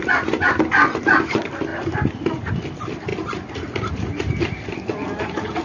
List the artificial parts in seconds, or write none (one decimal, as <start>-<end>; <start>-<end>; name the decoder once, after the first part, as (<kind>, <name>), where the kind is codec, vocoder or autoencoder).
0.0-1.7 (vocoder, BigVGAN v2); 2.5-5.6